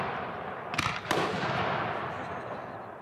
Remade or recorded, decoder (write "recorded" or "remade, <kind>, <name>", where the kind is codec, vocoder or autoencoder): recorded